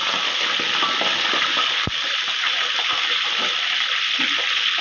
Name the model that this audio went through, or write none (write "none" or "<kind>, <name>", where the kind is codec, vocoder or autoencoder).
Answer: none